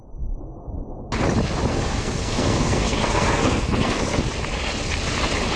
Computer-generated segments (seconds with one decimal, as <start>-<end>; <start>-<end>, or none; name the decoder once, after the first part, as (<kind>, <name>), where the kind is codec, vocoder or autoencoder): 1.7-4.2 (codec, SNAC)